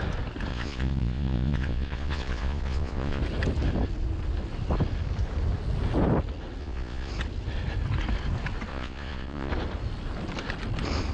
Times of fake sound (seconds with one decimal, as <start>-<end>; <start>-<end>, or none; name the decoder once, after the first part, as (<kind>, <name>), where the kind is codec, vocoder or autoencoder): 0.5-3.2 (vocoder, Vocos); 6.6-7.1; 8.7-9.5